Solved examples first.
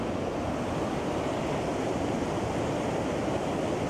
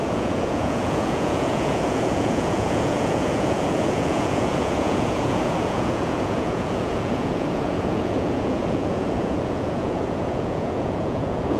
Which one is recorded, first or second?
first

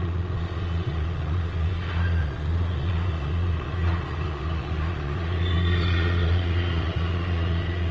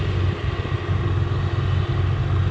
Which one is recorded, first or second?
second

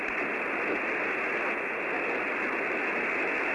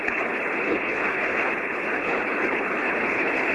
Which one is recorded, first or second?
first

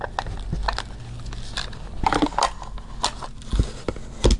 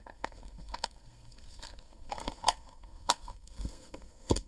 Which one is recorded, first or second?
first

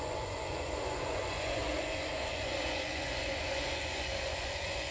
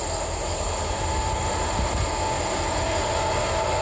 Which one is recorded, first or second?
second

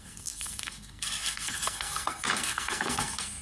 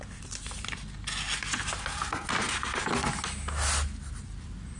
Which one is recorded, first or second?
second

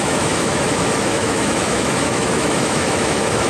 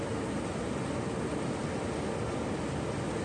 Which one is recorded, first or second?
second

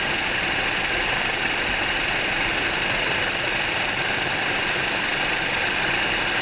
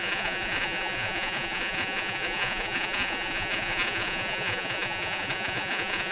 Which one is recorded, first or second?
first